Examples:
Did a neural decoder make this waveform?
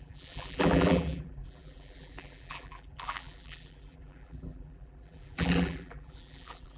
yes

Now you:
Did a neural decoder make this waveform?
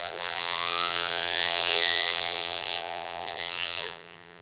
yes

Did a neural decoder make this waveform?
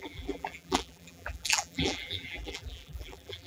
yes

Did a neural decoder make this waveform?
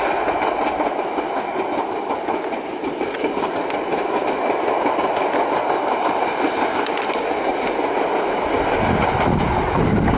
no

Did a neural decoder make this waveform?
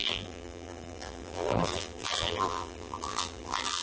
yes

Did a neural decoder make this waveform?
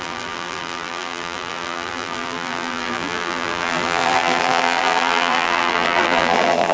yes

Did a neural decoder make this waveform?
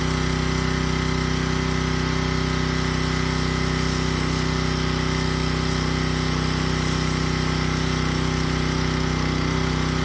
no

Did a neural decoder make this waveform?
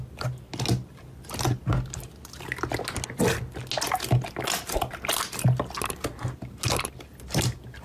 no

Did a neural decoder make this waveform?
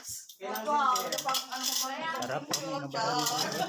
yes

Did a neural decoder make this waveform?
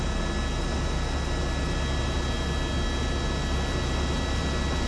no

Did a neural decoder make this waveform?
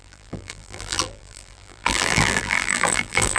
yes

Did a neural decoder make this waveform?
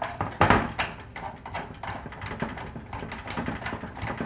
yes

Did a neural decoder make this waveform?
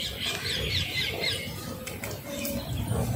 no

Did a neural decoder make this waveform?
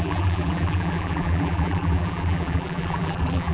yes